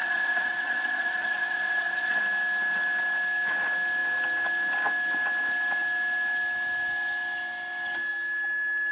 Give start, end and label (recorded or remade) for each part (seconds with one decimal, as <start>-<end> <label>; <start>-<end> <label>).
0.0-2.2 remade; 2.2-8.9 recorded